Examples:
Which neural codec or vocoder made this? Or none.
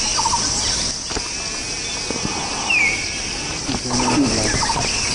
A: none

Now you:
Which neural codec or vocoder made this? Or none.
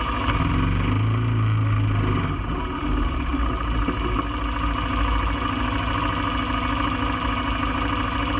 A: none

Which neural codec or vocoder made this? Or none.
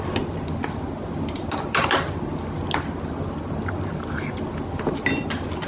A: none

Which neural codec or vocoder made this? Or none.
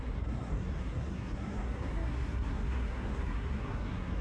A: codec, SNAC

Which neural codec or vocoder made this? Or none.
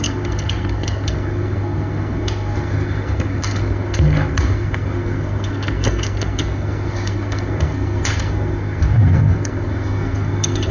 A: codec, SNAC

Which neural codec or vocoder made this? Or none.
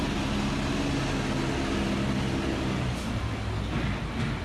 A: none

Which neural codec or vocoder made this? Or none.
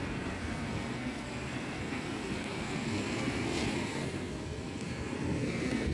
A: codec, SNAC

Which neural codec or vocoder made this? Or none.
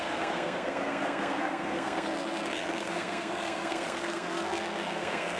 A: codec, SNAC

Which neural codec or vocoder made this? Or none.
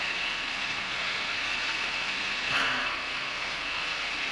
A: codec, SNAC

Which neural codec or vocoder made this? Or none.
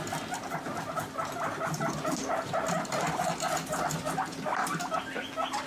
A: none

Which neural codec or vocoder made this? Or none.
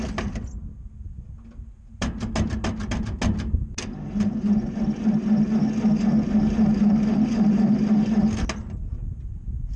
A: none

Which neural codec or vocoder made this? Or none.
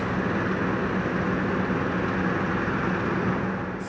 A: none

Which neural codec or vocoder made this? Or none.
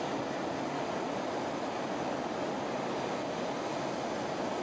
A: none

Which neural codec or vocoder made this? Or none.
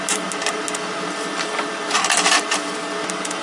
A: none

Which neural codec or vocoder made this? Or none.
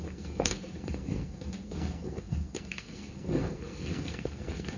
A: codec, SNAC